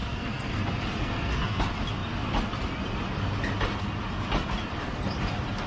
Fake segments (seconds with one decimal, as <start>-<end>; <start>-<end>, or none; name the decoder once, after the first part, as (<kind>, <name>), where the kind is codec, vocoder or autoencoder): 0.0-0.6 (codec, SNAC); 1.0-1.6